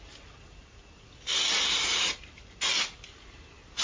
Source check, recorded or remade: recorded